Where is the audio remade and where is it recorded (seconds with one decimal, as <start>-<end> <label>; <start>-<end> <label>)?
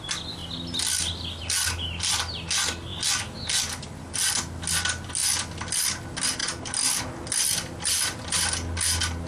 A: 0.0-9.3 recorded